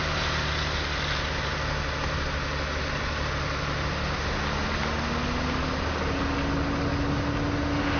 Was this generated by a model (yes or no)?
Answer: no